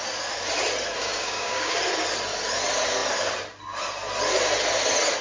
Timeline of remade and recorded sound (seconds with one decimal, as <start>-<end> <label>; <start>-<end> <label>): 0.0-1.0 recorded; 1.0-1.7 remade; 1.7-5.2 recorded